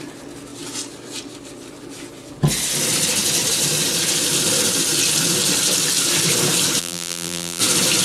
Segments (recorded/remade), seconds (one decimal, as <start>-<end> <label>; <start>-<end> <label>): 0.0-6.8 recorded; 6.8-7.6 remade; 7.6-8.0 recorded